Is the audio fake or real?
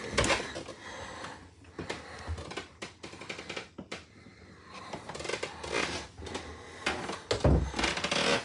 real